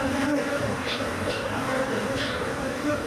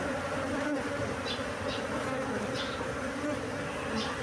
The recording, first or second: second